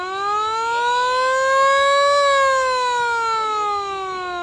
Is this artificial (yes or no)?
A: no